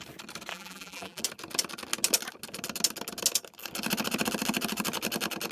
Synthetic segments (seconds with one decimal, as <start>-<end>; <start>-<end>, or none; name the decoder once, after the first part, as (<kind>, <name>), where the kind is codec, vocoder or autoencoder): 0.5-1.2 (vocoder, BigVGAN v2)